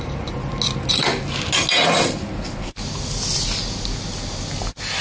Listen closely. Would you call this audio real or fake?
real